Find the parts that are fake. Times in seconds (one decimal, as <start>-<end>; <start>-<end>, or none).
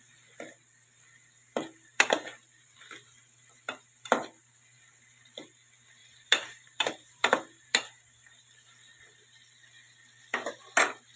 6.0-8.4